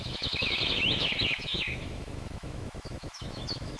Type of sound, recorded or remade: remade